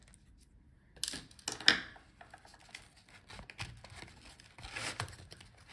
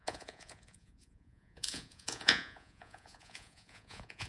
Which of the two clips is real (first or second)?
first